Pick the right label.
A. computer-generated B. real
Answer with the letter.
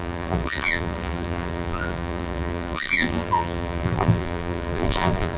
A